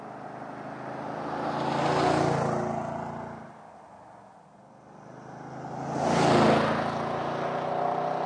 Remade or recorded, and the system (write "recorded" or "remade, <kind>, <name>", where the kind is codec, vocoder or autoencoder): recorded